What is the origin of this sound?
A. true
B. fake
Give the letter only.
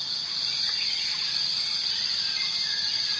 A